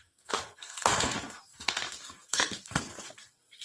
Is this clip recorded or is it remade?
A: remade